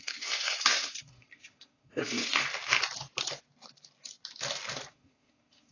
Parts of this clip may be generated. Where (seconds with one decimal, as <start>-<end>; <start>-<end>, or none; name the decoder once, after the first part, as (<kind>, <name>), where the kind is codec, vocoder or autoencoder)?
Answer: 0.0-2.4 (codec, SNAC); 4.9-5.7